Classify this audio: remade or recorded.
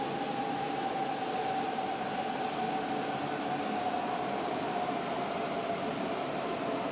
recorded